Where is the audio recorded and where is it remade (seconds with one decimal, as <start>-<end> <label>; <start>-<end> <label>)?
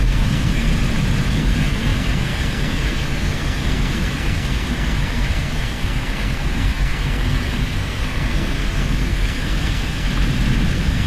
0.0-0.7 remade; 0.7-1.3 recorded; 1.3-10.1 remade; 10.1-10.7 recorded; 10.7-11.1 remade